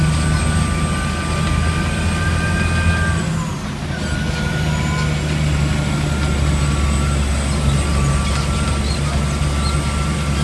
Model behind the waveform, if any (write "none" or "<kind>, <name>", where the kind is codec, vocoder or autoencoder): none